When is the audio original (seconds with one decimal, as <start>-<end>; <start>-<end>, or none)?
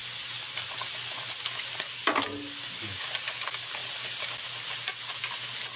0.0-5.8